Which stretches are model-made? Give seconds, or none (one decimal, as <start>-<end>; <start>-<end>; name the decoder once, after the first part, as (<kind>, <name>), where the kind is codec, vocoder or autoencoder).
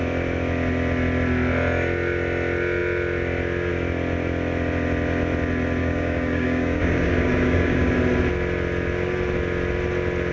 5.8-7.9 (codec, DAC)